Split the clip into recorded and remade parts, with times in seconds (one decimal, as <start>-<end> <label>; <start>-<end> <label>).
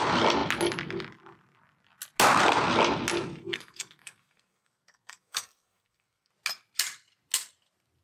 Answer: 0.0-3.4 recorded; 3.4-6.3 remade; 6.3-8.0 recorded